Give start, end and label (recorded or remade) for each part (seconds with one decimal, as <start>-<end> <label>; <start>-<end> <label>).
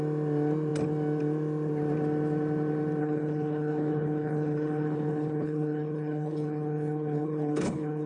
0.0-3.0 recorded; 3.0-8.1 remade